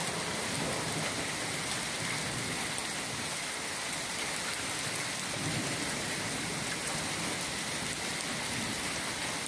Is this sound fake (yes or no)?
no